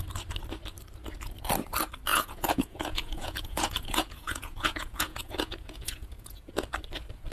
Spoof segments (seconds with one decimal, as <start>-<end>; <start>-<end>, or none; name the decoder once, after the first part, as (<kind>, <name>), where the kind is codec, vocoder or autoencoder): 2.1-6.5 (vocoder, Vocos)